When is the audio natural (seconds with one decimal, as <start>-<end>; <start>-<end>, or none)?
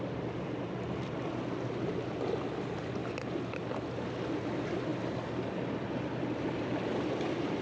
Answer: 0.0-7.6